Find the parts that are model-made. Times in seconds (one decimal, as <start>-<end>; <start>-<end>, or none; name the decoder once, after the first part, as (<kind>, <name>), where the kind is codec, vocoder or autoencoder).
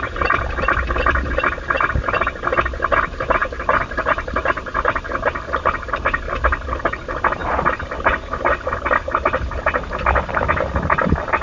none